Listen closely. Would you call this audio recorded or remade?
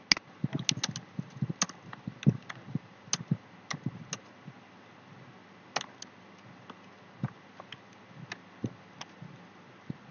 recorded